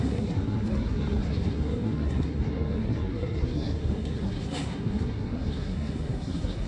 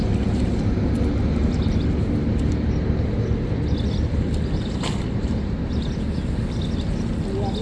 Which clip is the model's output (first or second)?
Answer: first